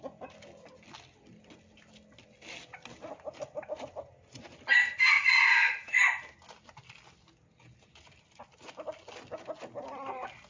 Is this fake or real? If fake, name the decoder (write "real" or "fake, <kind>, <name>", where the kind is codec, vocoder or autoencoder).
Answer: real